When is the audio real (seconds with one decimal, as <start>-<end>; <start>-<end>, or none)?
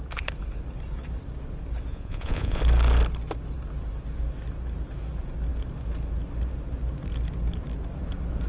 0.0-1.9; 2.6-8.5